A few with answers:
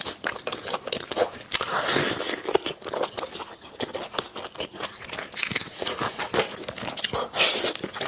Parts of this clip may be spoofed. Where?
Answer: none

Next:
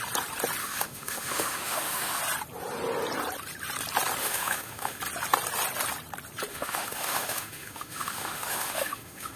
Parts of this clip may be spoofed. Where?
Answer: 0.6-2.2 (autoencoder, DAC-VAE); 4.2-5.0; 6.5-9.4

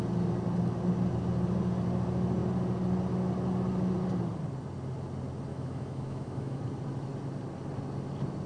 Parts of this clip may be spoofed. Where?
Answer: 5.5-6.6 (autoencoder, DAC-VAE)